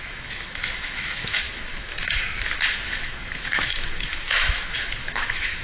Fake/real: fake